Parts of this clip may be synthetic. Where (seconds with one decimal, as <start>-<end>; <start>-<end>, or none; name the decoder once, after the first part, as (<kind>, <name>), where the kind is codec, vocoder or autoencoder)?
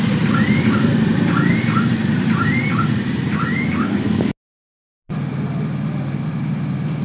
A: none